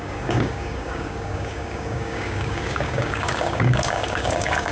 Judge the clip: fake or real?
fake